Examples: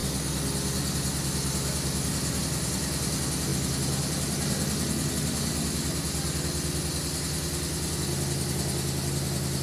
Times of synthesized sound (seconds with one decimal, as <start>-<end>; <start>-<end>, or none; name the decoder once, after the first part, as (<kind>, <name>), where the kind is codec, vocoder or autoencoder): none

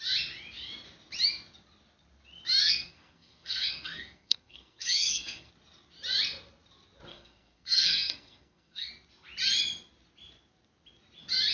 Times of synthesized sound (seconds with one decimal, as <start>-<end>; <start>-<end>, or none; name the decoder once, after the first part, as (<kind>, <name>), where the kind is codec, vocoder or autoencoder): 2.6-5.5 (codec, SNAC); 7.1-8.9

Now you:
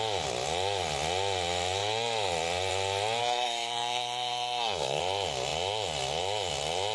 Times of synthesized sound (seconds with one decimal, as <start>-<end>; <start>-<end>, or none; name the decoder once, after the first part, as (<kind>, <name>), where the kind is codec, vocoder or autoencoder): 3.2-5.0 (codec, SNAC)